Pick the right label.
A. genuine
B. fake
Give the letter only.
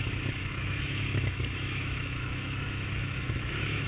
B